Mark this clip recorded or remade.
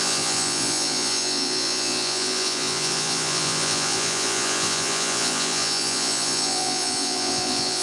remade